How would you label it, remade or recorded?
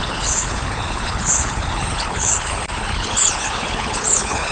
remade